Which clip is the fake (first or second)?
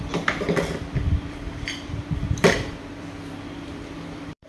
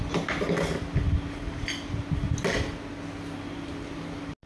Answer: first